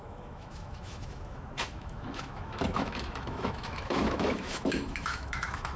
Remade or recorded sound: remade